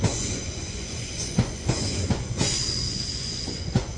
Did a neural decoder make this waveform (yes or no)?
yes